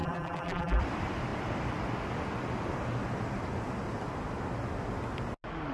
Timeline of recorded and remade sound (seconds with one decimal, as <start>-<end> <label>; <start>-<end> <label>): 0.0-0.8 remade; 0.8-5.7 recorded